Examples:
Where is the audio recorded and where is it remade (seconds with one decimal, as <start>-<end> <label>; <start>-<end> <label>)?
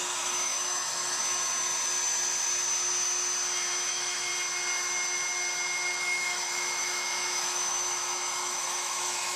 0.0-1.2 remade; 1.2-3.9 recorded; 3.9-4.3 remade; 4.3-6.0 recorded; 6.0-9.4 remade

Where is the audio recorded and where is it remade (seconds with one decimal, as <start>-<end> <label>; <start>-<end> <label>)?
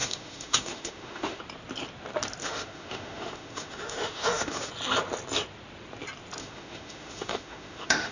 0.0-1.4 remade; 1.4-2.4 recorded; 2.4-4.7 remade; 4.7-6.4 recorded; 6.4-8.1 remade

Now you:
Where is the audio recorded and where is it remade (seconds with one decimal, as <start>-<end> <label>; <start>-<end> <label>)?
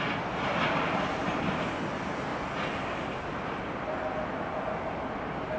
0.0-5.6 recorded